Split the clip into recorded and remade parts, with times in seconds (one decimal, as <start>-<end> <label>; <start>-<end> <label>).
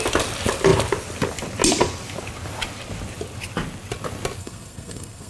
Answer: 0.0-4.4 recorded; 4.4-5.3 remade